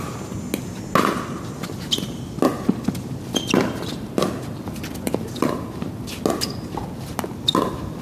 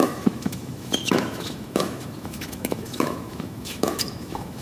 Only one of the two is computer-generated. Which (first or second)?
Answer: second